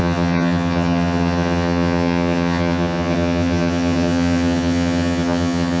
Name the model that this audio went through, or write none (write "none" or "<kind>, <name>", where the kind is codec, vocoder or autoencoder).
vocoder, HiFi-GAN